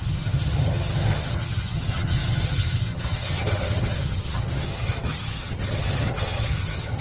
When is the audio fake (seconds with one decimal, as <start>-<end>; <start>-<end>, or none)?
0.0-7.0